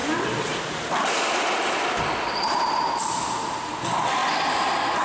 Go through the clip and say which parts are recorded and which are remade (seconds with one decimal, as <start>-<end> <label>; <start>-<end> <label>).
0.0-5.0 recorded